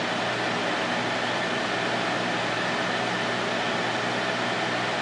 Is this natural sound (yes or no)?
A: yes